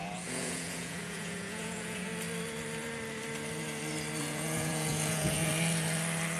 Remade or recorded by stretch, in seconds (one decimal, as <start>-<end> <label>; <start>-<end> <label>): 0.0-2.1 remade; 2.1-4.2 recorded; 4.2-5.5 remade; 5.5-6.4 recorded